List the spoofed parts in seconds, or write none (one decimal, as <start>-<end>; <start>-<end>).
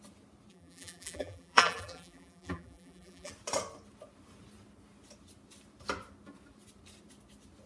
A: 0.5-3.3